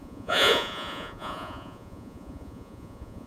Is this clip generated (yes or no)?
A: yes